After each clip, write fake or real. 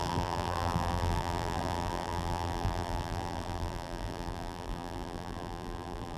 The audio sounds fake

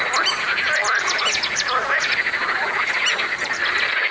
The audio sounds real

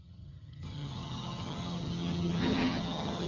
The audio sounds fake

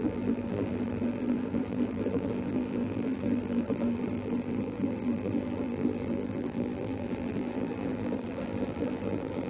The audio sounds fake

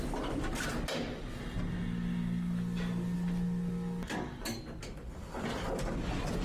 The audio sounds real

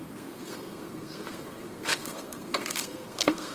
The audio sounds fake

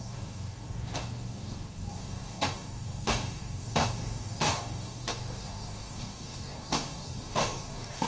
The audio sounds fake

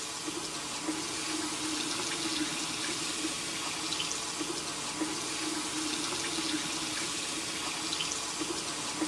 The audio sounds real